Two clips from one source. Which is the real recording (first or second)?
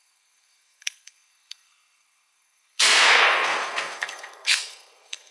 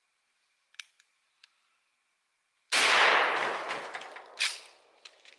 second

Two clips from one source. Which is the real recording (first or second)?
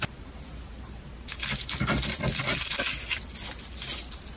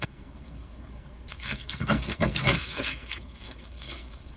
first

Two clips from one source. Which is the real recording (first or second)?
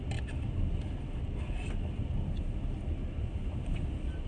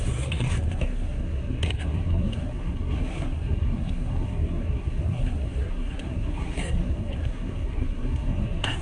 first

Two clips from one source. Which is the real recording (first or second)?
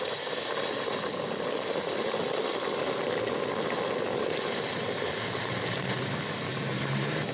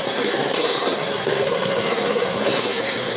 first